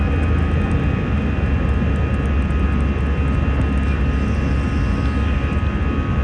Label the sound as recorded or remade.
recorded